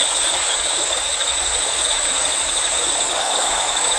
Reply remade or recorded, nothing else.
remade